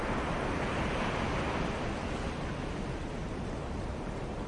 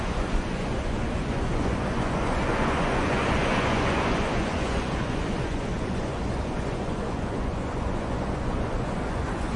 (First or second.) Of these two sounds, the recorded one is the first